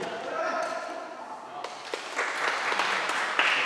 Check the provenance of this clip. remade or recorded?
recorded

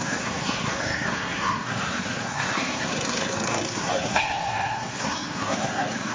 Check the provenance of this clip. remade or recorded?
remade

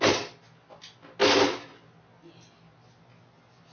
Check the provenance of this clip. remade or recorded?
recorded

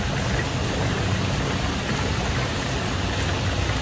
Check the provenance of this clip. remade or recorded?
recorded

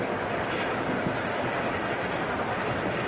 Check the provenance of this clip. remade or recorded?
recorded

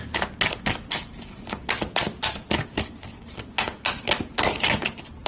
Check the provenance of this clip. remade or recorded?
recorded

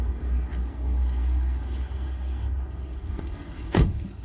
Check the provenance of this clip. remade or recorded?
remade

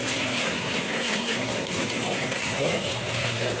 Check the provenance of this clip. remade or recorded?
remade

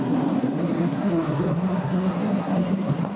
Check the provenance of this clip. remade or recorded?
remade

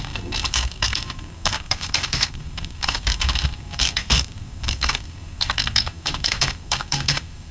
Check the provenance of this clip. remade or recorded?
remade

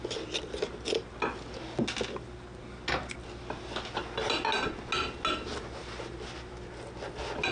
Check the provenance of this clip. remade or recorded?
recorded